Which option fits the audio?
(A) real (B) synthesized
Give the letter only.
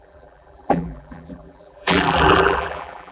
B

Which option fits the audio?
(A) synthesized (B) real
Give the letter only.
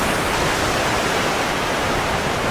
B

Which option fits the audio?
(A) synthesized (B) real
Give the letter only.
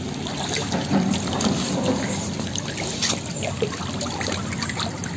A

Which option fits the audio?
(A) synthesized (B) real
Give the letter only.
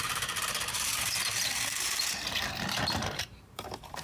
A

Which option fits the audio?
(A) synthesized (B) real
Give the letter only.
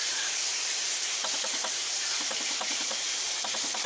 A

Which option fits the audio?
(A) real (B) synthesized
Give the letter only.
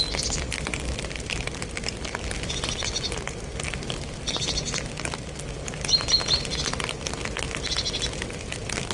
A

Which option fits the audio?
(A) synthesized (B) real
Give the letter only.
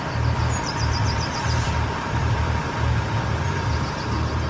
A